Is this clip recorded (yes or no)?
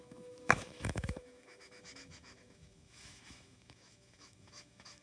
no